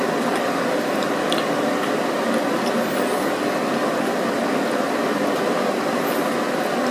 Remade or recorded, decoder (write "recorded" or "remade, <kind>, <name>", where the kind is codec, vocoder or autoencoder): recorded